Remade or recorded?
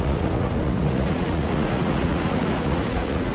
remade